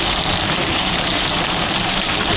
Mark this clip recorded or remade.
remade